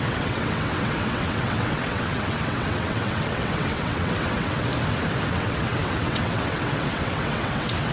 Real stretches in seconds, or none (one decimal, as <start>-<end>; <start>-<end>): 4.7-5.3